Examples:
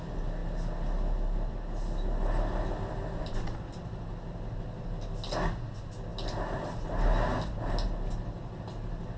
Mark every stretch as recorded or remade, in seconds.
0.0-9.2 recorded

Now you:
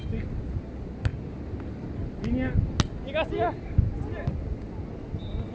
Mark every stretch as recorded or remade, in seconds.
0.0-5.5 recorded

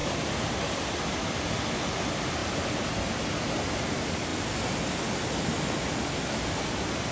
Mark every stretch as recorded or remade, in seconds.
0.0-7.1 recorded

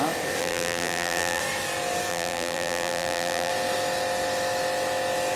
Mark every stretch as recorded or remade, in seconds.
0.0-0.4 recorded; 0.4-1.4 remade; 1.4-2.1 recorded; 2.1-3.5 remade; 3.5-5.4 recorded

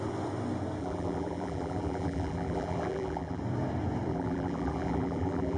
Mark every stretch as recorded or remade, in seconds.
0.0-0.8 recorded; 0.8-3.4 remade; 3.4-4.1 recorded; 4.1-5.6 remade

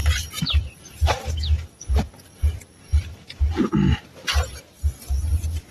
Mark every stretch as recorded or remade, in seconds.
0.0-1.9 remade; 1.9-2.9 recorded; 2.9-3.5 remade; 3.5-5.7 recorded